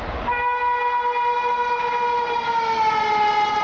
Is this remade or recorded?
recorded